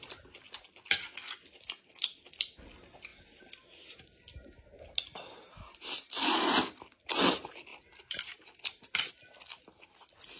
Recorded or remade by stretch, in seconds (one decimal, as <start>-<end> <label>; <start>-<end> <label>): 0.0-10.4 recorded